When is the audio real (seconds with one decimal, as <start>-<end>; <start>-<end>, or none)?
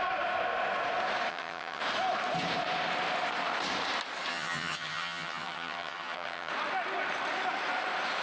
0.0-1.3; 1.8-4.3; 6.5-8.2